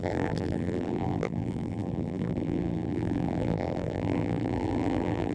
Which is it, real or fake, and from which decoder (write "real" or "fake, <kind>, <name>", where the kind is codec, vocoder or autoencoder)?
fake, vocoder, BigVGAN v2